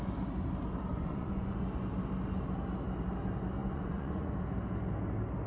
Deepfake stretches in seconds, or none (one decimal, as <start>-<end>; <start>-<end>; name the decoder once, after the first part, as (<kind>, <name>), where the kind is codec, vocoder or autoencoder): 0.9-1.8 (vocoder, Vocos); 3.6-4.3